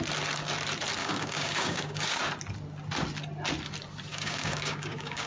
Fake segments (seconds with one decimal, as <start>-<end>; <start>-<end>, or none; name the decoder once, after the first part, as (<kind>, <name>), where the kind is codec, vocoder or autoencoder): 1.0-2.2 (codec, DAC); 4.1-5.3